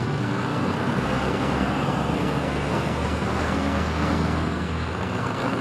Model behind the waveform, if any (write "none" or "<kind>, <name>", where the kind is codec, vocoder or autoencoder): codec, SNAC